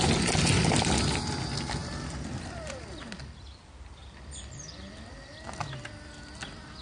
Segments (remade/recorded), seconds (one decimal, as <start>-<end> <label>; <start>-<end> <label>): 0.0-1.8 recorded; 1.8-3.0 remade; 3.0-4.0 recorded; 4.0-5.0 remade; 5.0-6.8 recorded